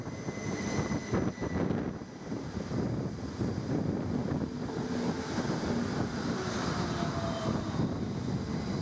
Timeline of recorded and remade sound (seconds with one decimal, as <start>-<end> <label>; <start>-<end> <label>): 0.0-8.8 recorded